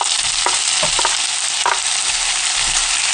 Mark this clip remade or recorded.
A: recorded